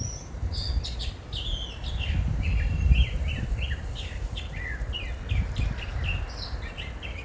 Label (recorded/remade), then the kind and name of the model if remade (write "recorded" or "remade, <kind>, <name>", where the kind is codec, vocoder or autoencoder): recorded